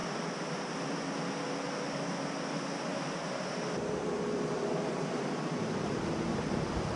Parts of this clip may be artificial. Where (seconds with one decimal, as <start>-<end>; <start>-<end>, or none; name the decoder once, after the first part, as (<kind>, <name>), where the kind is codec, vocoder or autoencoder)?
2.9-6.4 (vocoder, BigVGAN v2)